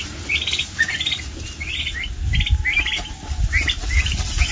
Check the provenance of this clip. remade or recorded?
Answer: recorded